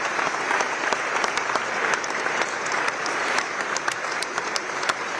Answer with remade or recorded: remade